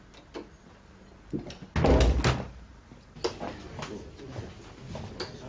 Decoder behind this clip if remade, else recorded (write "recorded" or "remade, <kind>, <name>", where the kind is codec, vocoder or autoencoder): recorded